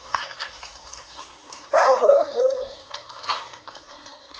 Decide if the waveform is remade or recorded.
remade